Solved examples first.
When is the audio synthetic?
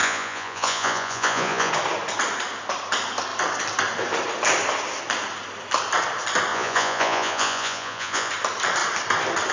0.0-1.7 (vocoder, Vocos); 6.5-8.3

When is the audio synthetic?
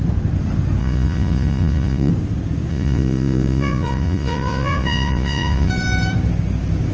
0.8-2.1 (vocoder, Vocos); 2.7-5.7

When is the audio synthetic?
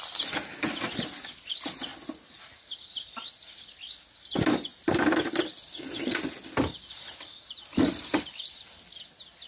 none